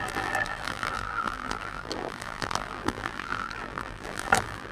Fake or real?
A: fake